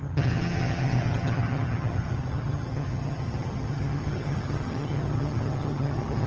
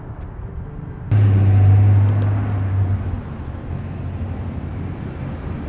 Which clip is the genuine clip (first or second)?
second